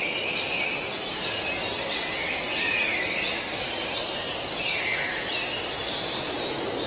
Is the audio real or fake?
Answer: real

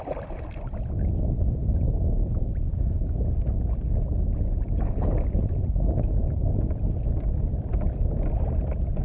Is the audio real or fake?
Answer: real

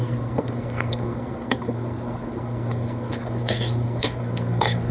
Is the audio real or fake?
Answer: fake